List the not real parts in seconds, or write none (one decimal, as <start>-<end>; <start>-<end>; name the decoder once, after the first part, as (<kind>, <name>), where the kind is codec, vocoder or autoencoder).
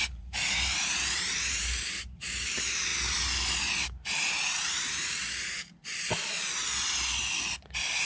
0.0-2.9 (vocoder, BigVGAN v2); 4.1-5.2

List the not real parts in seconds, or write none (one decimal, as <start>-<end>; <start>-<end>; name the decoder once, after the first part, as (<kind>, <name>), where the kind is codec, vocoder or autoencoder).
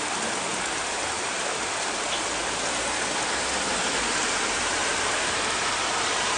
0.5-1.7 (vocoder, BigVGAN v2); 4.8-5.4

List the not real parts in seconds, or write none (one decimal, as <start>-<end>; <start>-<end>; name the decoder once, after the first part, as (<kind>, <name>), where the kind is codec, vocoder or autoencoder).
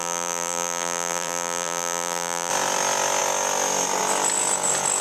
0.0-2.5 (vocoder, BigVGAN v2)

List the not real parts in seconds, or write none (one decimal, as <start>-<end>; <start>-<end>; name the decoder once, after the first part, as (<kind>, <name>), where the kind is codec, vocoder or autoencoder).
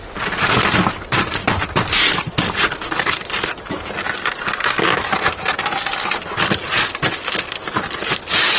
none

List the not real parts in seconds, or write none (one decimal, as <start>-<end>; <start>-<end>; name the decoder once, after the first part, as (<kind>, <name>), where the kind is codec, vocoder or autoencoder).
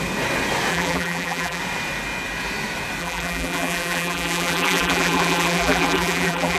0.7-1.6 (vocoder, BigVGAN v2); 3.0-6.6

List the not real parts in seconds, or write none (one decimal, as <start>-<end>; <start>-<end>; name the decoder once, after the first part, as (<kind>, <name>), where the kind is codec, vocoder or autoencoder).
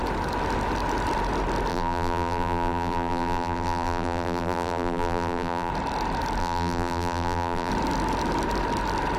1.7-5.7 (vocoder, BigVGAN v2); 6.4-7.7